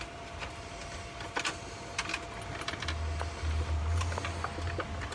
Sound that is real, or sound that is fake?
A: real